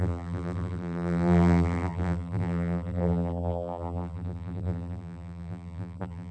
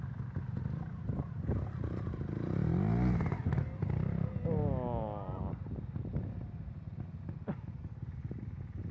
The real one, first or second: second